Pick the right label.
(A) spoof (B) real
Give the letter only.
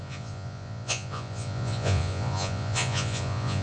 A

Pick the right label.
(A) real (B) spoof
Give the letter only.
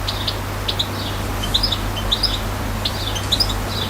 A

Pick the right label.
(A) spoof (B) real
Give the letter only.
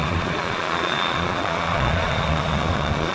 A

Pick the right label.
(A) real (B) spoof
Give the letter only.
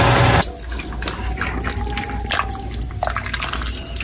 A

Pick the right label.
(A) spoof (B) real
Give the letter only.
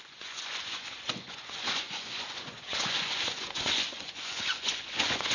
A